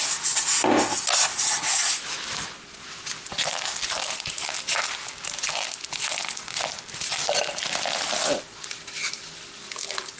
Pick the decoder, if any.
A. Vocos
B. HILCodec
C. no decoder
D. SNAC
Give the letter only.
C